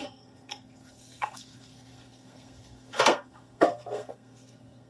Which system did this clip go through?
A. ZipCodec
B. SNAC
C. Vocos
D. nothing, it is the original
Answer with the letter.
B